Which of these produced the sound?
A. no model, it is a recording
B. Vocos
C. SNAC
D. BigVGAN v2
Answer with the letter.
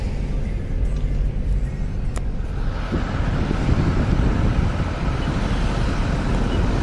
A